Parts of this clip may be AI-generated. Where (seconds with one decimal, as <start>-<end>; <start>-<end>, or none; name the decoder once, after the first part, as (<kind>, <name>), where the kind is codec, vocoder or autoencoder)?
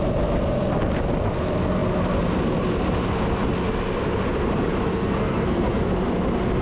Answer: 4.9-5.7 (codec, SNAC)